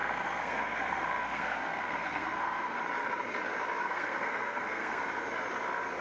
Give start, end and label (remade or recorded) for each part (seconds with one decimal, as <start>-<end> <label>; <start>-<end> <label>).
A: 0.0-2.8 remade; 2.8-3.8 recorded; 3.8-5.0 remade; 5.0-6.0 recorded